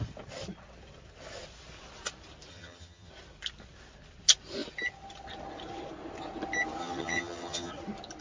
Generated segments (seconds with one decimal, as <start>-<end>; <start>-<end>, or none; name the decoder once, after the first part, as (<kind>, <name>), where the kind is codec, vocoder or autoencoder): 2.5-3.1 (vocoder, HiFi-GAN); 6.8-7.7